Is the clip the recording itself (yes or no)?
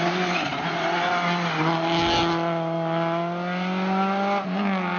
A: yes